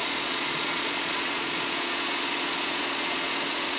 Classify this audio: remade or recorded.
remade